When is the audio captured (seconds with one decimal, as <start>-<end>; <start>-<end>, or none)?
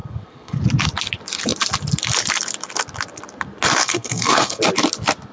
0.6-3.8; 4.6-5.3